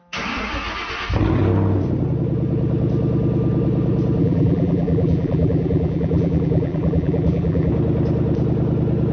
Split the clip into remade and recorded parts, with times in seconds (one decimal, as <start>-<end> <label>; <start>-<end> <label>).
0.0-4.2 recorded; 4.2-7.7 remade; 7.7-9.1 recorded